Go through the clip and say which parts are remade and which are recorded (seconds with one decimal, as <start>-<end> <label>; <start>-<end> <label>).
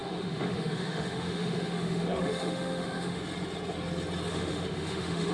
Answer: 0.0-3.2 remade; 3.2-4.3 recorded; 4.3-5.3 remade